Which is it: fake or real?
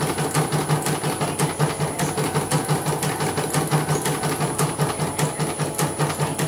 real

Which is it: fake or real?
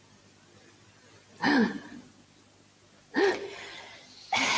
real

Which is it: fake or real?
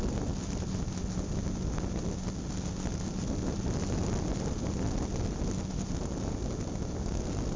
real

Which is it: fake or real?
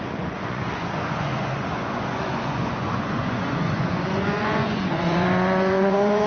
fake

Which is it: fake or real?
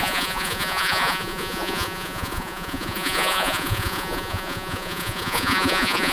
fake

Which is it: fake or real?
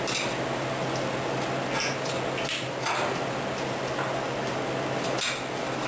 real